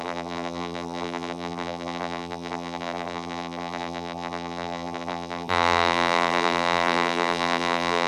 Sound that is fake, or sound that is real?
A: fake